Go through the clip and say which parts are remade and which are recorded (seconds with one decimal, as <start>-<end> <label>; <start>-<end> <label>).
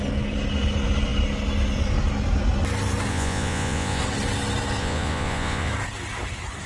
0.0-3.1 recorded; 3.1-4.0 remade; 4.0-4.8 recorded; 4.8-5.7 remade; 5.7-6.7 recorded